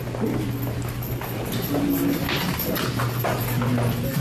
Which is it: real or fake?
real